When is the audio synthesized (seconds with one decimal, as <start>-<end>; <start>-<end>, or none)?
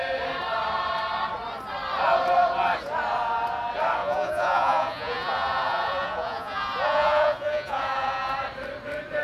4.0-8.3